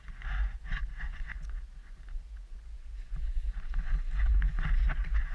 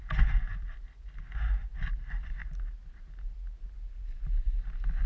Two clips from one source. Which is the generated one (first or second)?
first